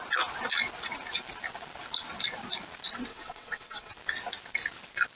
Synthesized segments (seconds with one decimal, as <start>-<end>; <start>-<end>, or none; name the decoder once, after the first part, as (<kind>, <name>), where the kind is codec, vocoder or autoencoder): 3.1-3.9 (vocoder, WaveNeXt)